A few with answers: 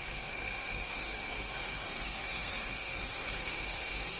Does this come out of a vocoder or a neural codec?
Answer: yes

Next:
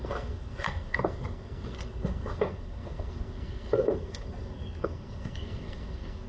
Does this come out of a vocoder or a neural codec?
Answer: yes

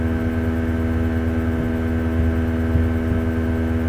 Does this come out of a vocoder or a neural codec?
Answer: no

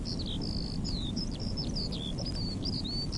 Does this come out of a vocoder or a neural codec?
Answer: no